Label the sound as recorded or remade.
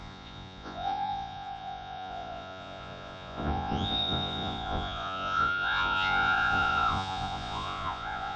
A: remade